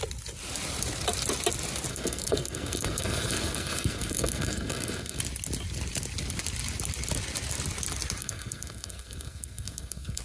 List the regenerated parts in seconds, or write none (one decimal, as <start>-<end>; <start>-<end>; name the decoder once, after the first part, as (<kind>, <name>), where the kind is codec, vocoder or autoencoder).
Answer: 1.9-5.2 (codec, SNAC); 8.2-10.2